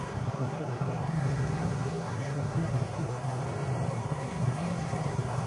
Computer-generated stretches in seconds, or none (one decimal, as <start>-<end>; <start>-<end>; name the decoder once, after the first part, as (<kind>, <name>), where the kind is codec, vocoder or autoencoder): 0.0-3.4 (codec, SNAC); 3.9-5.5